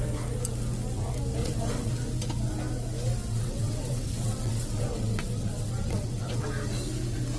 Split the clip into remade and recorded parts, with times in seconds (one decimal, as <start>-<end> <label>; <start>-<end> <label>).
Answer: 0.0-1.4 recorded; 1.4-1.9 remade; 1.9-3.2 recorded; 3.2-6.5 remade; 6.5-7.4 recorded